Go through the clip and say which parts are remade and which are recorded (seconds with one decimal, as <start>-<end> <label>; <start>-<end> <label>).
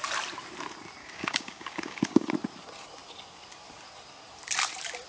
0.0-1.0 recorded; 1.0-2.3 remade; 2.3-5.1 recorded